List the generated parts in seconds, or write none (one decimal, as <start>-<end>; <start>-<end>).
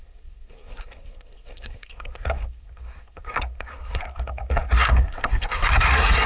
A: 0.0-6.3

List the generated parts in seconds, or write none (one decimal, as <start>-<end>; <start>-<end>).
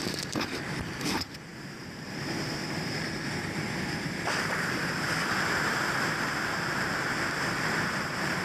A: 0.0-1.5; 2.4-8.4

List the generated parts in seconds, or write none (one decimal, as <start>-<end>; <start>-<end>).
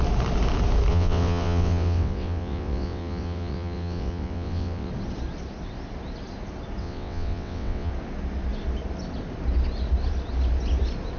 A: 0.9-4.9; 6.8-7.9